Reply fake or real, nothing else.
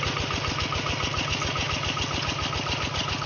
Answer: real